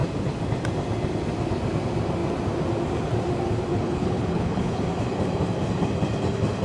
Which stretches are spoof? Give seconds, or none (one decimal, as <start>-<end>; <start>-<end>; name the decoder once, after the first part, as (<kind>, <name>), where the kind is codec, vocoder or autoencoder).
3.7-4.8 (codec, HILCodec)